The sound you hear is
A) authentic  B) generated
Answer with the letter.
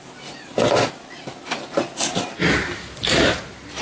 A